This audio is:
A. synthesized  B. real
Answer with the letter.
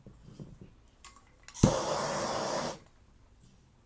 B